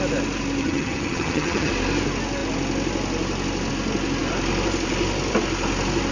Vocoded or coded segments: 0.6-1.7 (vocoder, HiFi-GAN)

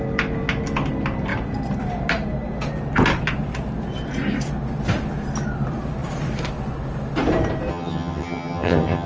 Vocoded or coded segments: 7.7-9.1 (vocoder, HiFi-GAN)

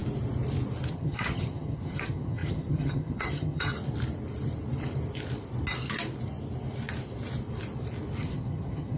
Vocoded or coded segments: 0.9-3.7 (vocoder, HiFi-GAN); 8.2-9.0